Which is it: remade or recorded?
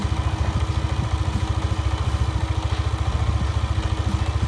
recorded